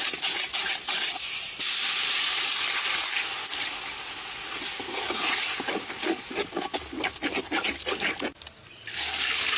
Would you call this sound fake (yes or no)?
no